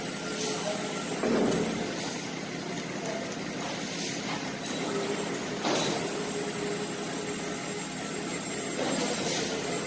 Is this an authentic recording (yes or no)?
yes